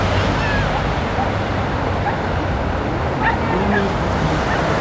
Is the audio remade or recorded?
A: recorded